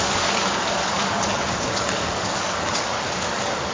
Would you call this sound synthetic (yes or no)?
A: yes